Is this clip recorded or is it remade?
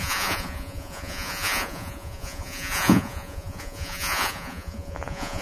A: remade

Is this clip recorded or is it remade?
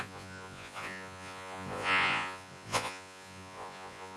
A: remade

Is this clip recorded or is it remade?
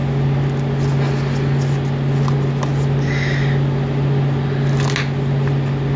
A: recorded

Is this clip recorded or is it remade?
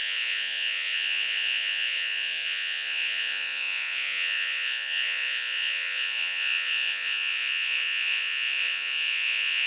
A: remade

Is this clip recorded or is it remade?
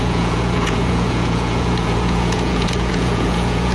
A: remade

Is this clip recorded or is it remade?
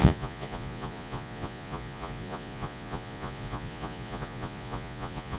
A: remade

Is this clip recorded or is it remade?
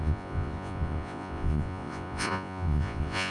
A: remade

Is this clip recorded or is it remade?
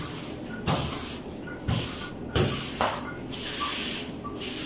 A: recorded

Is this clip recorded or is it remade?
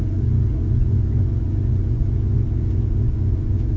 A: remade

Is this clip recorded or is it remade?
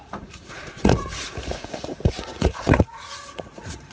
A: remade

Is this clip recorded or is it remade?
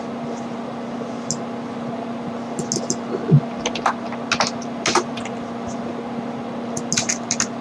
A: recorded